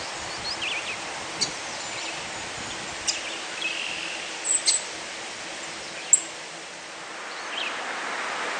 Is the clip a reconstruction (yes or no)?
no